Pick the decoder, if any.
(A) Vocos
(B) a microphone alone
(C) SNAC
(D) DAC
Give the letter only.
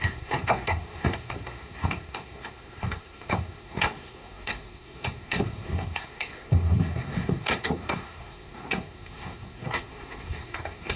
C